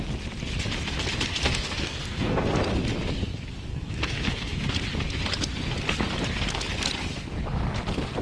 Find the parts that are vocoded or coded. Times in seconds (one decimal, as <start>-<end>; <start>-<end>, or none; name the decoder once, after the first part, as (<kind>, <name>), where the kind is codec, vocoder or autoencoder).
1.3-2.5 (codec, SNAC); 3.7-4.7